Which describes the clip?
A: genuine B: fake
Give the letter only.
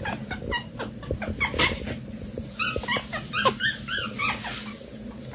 A